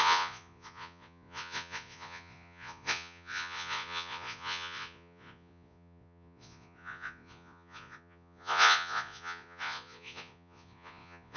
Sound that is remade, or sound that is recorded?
remade